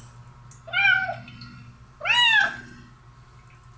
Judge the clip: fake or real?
real